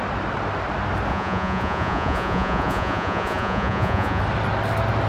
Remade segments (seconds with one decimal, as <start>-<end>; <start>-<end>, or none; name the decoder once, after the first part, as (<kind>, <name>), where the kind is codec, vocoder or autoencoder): 1.1-4.2 (vocoder, Vocos)